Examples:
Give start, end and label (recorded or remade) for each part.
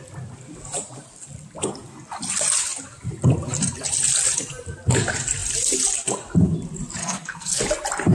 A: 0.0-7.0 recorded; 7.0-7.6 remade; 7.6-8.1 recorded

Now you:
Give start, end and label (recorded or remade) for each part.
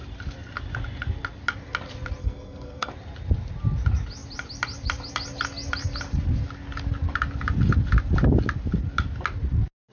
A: 0.0-2.2 recorded; 2.2-2.9 remade; 2.9-9.9 recorded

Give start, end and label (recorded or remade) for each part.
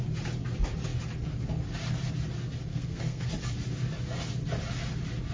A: 0.0-2.7 recorded; 2.7-3.3 remade; 3.3-5.3 recorded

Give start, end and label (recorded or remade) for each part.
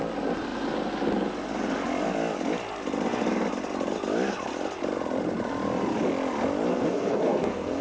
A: 0.0-6.7 recorded; 6.7-7.8 remade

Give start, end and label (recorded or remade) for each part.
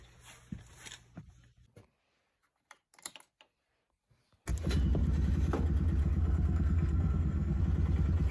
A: 0.0-6.0 recorded; 6.0-7.6 remade; 7.6-8.3 recorded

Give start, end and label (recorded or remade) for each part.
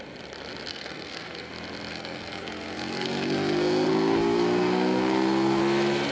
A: 0.0-0.7 recorded; 0.7-1.5 remade; 1.5-1.9 recorded; 1.9-5.6 remade; 5.6-6.1 recorded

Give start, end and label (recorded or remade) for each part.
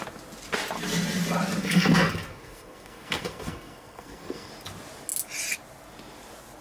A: 0.0-1.6 recorded; 1.6-4.5 remade; 4.5-6.6 recorded